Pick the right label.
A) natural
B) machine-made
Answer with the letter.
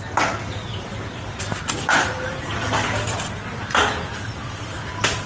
B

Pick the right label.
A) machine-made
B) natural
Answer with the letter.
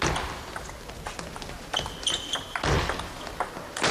B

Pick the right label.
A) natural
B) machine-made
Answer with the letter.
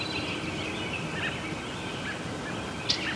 A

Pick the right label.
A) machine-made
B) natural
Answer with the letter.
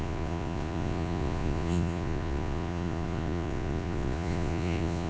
A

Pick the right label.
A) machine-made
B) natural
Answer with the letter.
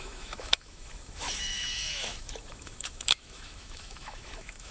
A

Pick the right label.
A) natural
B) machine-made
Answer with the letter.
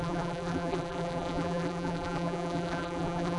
B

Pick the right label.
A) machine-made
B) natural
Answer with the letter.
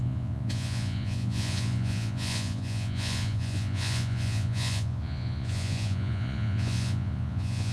A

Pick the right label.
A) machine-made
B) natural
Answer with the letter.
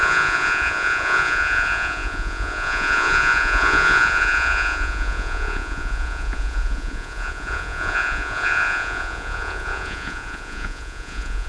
A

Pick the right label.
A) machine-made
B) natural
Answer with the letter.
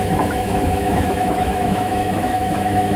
A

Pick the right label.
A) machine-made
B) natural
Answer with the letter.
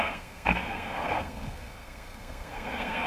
A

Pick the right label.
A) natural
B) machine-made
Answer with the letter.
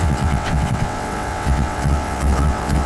B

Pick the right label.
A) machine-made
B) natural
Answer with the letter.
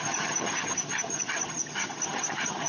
A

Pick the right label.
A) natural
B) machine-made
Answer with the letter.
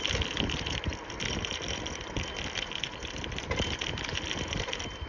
B